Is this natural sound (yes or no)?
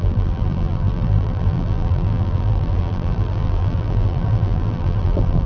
no